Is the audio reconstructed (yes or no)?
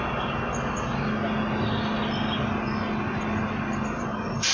no